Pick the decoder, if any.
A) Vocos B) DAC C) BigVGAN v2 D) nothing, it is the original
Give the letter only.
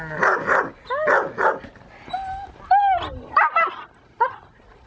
D